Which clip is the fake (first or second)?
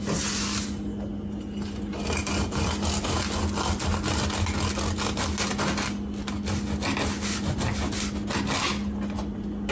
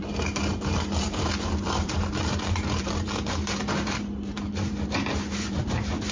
second